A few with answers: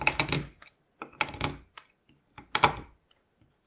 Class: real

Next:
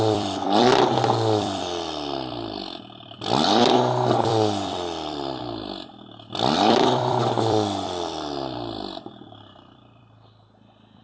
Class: fake